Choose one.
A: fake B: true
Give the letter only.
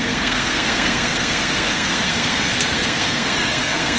A